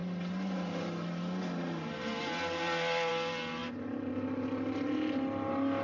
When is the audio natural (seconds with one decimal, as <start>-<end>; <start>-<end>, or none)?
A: 0.0-5.8